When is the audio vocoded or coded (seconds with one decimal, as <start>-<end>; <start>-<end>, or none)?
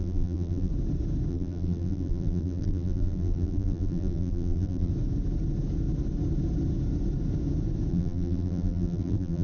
0.0-0.7; 1.3-4.9; 7.9-9.4